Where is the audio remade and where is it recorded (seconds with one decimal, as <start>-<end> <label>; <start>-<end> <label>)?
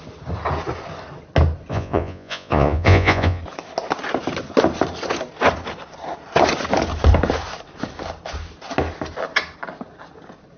0.0-1.7 recorded; 1.7-3.4 remade; 3.4-10.6 recorded